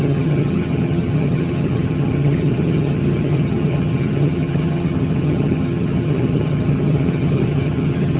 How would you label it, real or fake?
fake